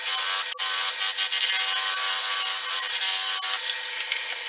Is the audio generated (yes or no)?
no